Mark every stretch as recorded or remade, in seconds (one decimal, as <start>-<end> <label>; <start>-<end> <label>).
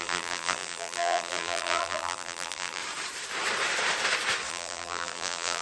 0.0-2.8 remade; 2.8-4.5 recorded; 4.5-5.6 remade